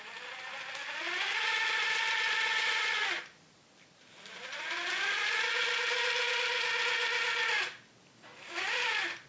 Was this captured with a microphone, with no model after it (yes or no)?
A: yes